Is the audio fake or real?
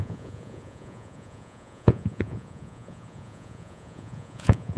fake